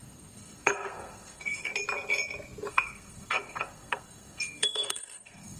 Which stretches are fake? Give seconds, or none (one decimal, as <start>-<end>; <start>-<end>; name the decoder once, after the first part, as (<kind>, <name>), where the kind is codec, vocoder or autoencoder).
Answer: 0.0-1.7 (codec, SNAC); 2.7-5.6